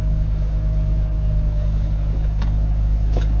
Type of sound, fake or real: fake